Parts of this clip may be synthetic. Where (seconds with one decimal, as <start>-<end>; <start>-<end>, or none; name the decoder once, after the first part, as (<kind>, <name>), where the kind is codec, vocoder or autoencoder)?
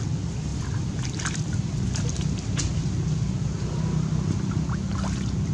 none